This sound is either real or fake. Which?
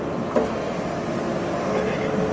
real